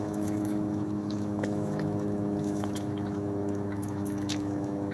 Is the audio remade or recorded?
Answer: remade